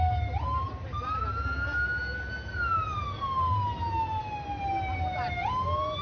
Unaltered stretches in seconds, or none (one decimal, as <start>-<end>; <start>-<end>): 0.0-6.0